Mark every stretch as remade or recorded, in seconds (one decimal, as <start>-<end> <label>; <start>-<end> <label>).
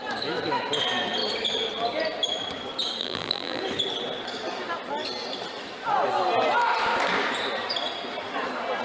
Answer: 0.0-3.0 recorded; 3.0-3.6 remade; 3.6-8.8 recorded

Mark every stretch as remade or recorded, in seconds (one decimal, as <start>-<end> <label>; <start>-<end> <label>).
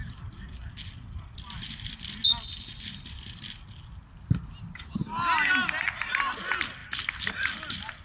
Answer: 0.0-8.0 recorded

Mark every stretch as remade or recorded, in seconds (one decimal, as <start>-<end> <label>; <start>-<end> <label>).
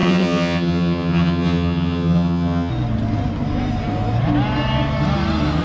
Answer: 0.0-2.7 remade; 2.7-5.6 recorded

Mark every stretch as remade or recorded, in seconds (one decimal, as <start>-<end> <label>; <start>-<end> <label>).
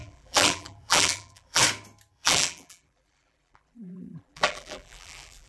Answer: 0.0-1.6 remade; 1.6-2.1 recorded; 2.1-5.5 remade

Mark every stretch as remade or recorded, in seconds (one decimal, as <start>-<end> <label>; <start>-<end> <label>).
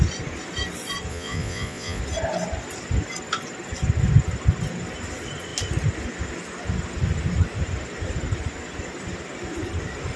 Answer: 0.0-1.1 recorded; 1.1-2.0 remade; 2.0-10.2 recorded